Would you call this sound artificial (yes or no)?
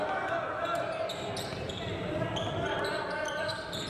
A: no